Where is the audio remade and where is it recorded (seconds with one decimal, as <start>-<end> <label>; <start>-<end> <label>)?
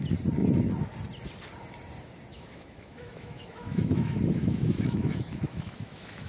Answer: 0.0-2.3 recorded; 2.3-6.3 remade